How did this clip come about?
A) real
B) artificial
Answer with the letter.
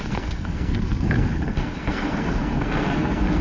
B